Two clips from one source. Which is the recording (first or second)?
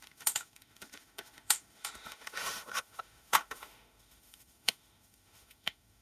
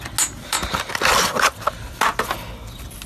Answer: second